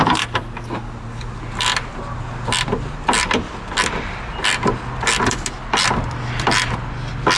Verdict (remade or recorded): recorded